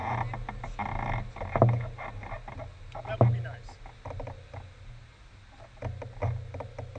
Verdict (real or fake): real